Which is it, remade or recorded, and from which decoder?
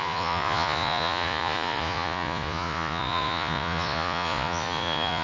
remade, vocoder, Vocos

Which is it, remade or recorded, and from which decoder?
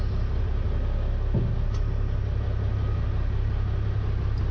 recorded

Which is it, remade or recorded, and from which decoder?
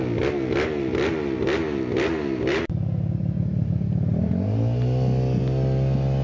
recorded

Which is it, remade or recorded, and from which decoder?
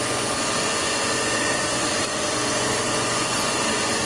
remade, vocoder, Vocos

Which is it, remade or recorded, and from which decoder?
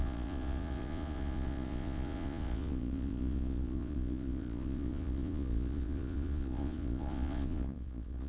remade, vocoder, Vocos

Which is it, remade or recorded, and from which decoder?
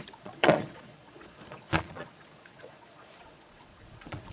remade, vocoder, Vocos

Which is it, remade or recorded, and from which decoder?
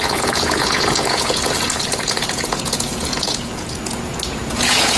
remade, vocoder, Vocos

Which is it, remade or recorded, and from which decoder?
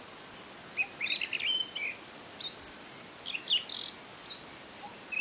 recorded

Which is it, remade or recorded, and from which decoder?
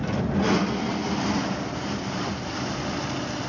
recorded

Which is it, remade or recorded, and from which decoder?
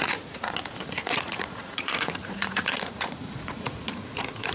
remade, vocoder, Vocos